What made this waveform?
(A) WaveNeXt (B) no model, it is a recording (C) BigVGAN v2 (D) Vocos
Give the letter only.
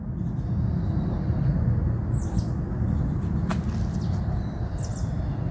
B